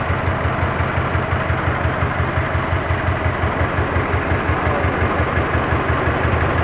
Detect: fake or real real